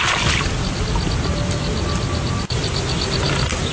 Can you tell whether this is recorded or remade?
recorded